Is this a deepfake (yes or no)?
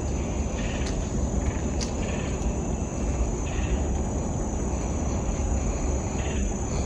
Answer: no